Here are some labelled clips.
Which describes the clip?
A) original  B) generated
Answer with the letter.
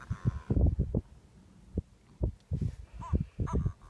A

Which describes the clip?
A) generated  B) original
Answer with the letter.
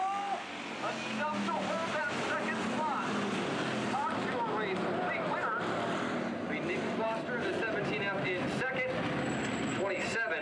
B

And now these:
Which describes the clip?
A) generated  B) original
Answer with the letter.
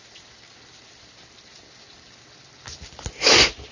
B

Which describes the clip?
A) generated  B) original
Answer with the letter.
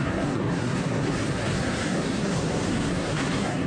A